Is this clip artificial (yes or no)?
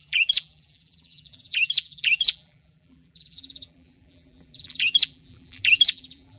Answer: yes